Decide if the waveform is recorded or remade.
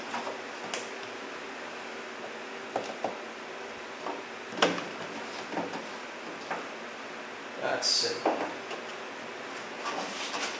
recorded